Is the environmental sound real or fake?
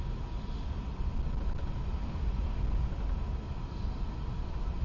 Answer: real